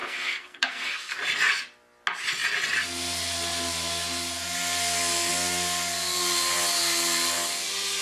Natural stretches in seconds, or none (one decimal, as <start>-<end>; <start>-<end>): 1.2-8.0